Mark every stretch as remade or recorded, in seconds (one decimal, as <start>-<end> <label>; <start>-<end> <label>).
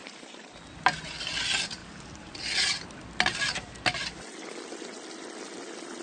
0.0-0.5 remade; 0.5-6.0 recorded